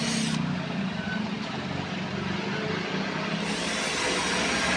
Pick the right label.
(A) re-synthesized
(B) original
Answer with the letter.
B